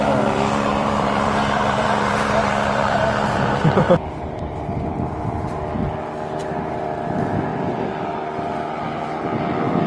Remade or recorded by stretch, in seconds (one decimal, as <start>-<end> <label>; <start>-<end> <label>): 0.0-0.7 recorded; 0.7-5.6 remade; 5.6-6.4 recorded; 6.4-7.0 remade; 7.0-9.9 recorded